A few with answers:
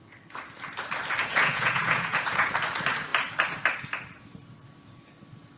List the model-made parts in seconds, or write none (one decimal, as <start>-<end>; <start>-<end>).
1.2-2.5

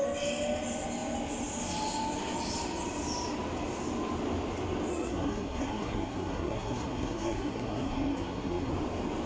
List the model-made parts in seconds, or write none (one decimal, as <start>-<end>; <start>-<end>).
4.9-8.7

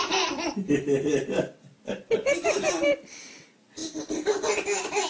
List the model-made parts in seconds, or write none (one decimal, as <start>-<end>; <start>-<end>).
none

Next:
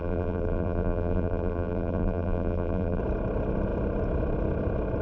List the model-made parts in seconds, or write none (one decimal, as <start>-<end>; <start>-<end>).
0.0-3.0

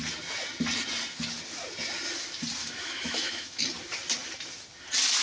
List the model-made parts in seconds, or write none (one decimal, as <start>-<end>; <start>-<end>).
2.6-3.6